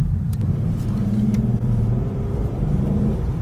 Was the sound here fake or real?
fake